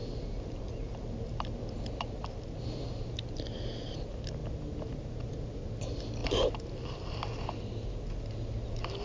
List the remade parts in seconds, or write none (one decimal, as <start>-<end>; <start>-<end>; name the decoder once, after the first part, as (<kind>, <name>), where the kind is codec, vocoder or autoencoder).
none

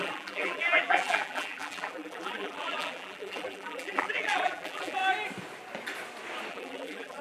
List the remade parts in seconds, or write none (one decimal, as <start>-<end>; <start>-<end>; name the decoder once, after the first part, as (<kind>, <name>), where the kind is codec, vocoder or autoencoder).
0.0-5.0 (vocoder, BigVGAN v2); 6.5-7.2